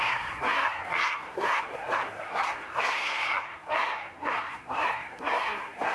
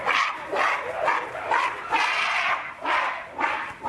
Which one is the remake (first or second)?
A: first